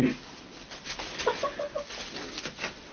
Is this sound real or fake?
real